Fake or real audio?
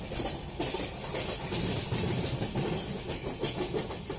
real